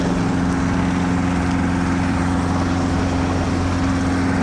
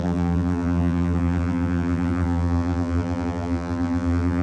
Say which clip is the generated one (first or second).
second